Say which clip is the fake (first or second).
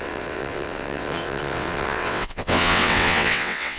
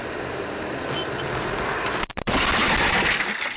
first